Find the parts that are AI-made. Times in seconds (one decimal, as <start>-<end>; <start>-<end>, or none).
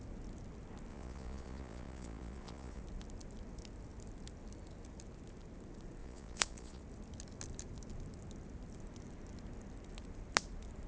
0.9-2.8; 6.0-6.8